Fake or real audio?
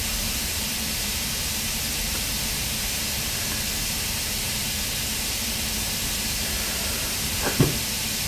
fake